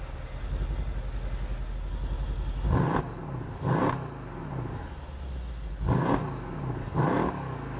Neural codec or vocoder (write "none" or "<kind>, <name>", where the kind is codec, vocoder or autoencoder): none